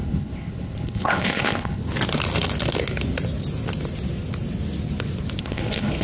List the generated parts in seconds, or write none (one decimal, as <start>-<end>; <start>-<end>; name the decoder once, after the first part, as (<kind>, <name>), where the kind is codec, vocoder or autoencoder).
0.0-1.8 (codec, HILCodec); 5.4-6.0